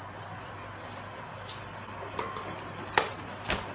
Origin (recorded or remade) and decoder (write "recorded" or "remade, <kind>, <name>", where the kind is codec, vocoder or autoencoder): recorded